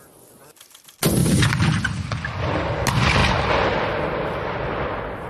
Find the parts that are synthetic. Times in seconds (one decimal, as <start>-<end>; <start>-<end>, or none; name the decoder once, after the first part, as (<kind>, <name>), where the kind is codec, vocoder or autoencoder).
none